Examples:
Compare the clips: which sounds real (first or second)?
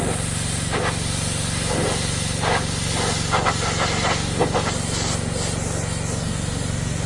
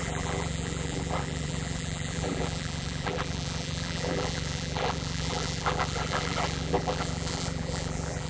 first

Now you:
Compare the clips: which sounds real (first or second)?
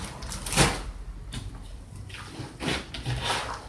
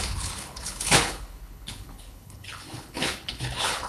first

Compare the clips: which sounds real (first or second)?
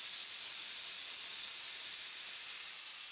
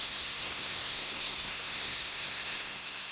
first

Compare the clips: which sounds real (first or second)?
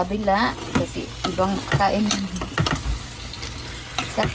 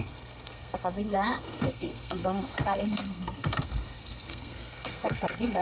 first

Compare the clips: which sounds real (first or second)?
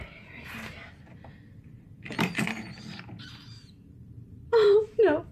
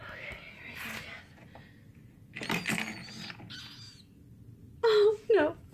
second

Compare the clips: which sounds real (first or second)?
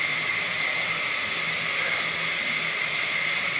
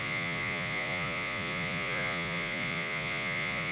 first